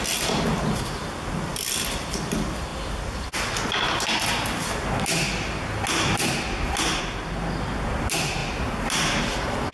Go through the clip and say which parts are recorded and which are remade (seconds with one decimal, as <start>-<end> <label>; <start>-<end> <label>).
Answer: 0.0-9.7 recorded